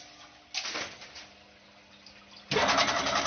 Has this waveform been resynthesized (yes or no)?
no